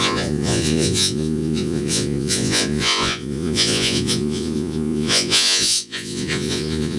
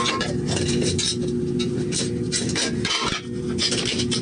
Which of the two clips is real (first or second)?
second